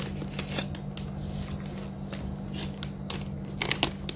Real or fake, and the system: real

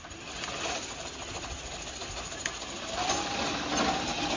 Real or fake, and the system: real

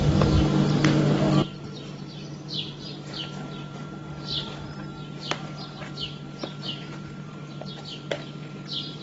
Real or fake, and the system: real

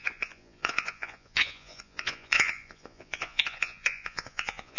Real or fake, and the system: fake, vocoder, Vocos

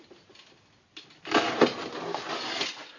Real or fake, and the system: real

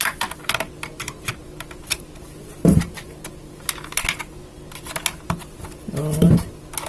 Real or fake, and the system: real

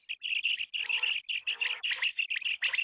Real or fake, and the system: real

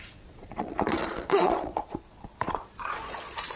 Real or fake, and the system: fake, vocoder, Vocos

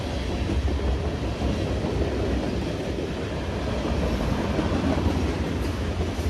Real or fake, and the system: real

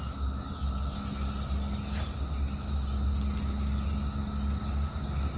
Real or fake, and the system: real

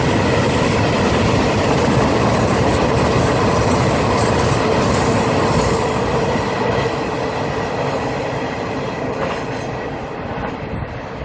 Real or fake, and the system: real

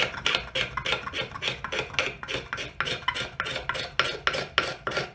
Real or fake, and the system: real